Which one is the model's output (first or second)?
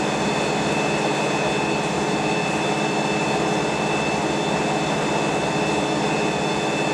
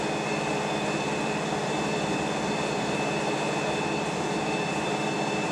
second